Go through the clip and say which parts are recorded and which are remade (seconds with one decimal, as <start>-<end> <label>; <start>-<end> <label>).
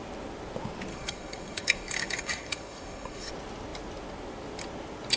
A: 0.0-0.9 recorded; 0.9-3.3 remade; 3.3-5.2 recorded